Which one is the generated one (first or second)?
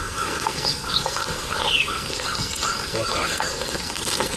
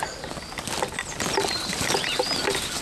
first